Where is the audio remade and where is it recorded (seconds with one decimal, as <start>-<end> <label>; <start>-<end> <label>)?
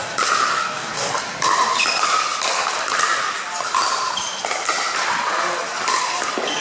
0.0-0.5 recorded; 0.5-1.1 remade; 1.1-6.6 recorded